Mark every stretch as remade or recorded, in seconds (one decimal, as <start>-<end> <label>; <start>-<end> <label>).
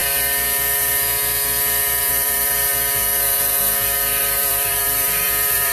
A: 0.0-2.1 recorded; 2.1-2.7 remade; 2.7-4.2 recorded; 4.2-5.7 remade